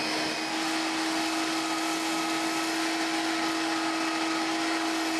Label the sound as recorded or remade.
recorded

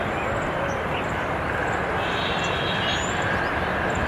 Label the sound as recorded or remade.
recorded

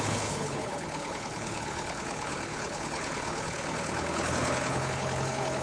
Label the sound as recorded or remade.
remade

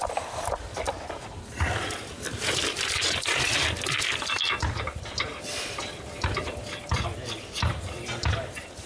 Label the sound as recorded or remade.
remade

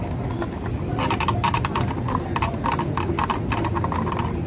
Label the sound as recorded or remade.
recorded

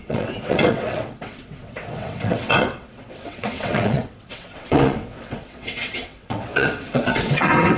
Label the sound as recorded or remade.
remade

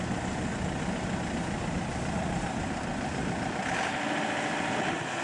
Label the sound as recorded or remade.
recorded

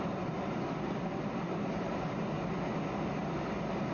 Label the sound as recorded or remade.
recorded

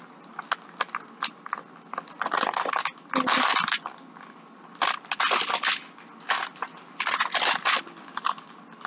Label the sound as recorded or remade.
recorded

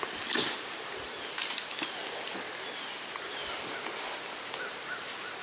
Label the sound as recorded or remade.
recorded